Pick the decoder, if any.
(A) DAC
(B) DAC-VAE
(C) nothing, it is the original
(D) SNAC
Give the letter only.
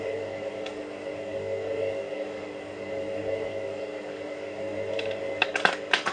A